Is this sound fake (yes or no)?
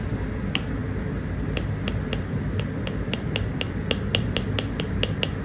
no